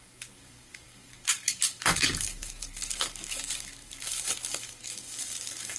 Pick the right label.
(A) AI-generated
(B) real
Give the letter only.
A